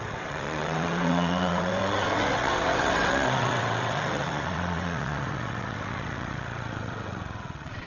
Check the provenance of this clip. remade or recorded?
remade